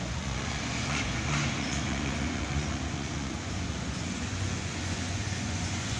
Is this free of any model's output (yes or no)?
no